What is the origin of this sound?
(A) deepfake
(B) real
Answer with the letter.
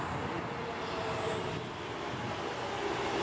B